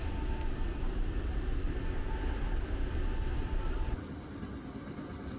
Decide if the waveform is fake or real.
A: real